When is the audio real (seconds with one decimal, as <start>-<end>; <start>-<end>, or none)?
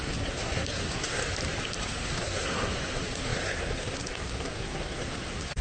1.2-1.8